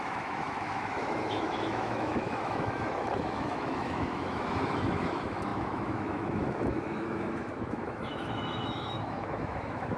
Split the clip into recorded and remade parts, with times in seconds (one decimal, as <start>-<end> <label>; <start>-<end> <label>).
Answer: 0.0-10.0 remade